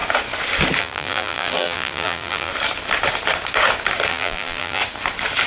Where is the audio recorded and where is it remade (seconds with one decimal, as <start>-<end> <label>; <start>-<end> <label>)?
0.0-0.8 recorded; 0.8-2.5 remade; 2.5-4.1 recorded; 4.1-4.8 remade; 4.8-5.5 recorded